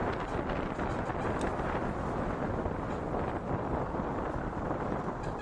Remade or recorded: recorded